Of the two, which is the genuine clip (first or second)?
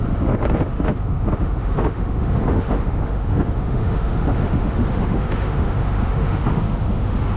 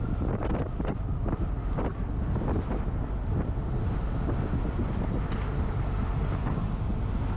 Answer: second